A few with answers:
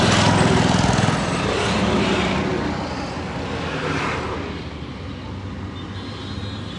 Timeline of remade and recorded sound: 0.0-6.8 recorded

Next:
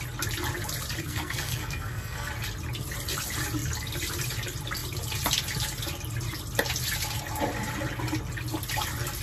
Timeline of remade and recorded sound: 0.0-1.0 recorded; 1.0-2.3 remade; 2.3-9.2 recorded

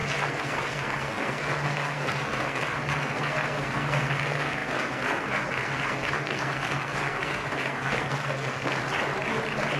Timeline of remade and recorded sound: 0.0-8.8 remade; 8.8-9.8 recorded

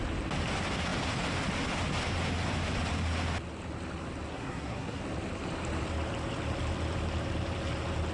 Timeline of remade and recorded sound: 0.0-4.3 recorded; 4.3-5.0 remade; 5.0-8.1 recorded